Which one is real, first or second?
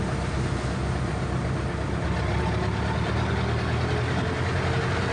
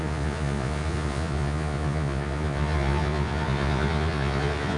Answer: first